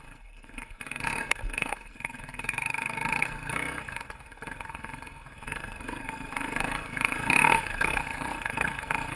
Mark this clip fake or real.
fake